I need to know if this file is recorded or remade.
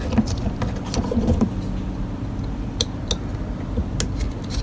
recorded